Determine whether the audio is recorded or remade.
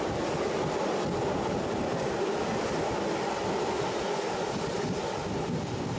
recorded